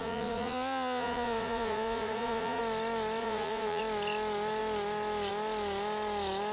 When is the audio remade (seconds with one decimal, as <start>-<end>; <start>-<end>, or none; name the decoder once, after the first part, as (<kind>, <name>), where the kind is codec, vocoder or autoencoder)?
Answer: 0.0-2.6 (vocoder, Vocos); 3.2-3.8